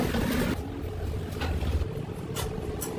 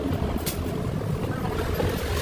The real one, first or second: second